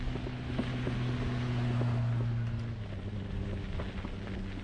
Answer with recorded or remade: recorded